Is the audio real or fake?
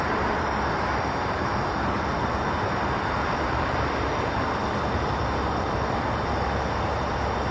fake